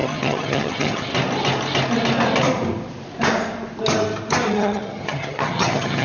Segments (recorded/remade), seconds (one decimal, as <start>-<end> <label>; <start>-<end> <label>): 0.0-1.1 remade; 1.1-4.5 recorded; 4.5-6.0 remade

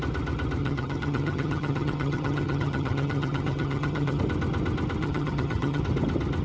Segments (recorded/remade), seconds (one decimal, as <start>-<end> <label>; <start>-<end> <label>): 0.0-0.6 recorded; 0.6-4.2 remade; 4.2-5.0 recorded; 5.0-5.8 remade; 5.8-6.4 recorded

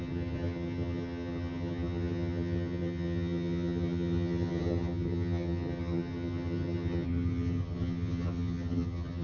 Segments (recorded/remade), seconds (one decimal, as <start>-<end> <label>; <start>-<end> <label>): 0.0-9.2 remade

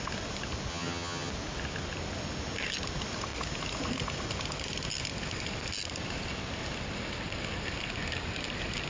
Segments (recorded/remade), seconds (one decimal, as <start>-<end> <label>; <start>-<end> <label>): 0.0-0.7 recorded; 0.7-1.3 remade; 1.3-8.9 recorded

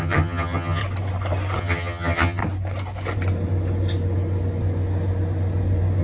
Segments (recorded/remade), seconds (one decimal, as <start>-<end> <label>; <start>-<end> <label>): 0.0-0.8 remade; 0.8-1.6 recorded; 1.6-2.4 remade; 2.4-6.0 recorded

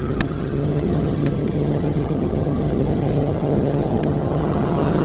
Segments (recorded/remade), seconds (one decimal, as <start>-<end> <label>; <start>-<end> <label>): 0.0-5.0 remade

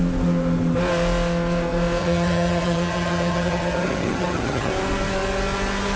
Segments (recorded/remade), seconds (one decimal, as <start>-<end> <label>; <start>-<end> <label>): 0.0-2.0 recorded; 2.0-4.7 remade; 4.7-6.0 recorded

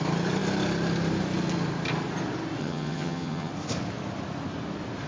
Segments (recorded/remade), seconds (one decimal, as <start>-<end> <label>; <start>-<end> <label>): 0.0-2.6 recorded; 2.6-3.5 remade; 3.5-5.1 recorded